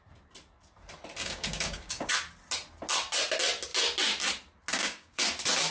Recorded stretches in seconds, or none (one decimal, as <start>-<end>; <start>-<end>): 0.0-1.2; 2.1-4.7; 5.2-5.7